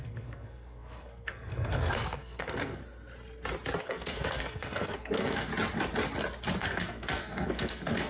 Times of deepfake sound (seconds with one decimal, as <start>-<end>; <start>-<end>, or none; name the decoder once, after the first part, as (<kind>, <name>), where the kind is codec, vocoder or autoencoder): 0.0-2.8 (codec, SNAC); 3.8-5.5; 6.6-8.1